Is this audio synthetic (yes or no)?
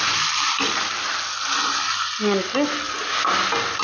no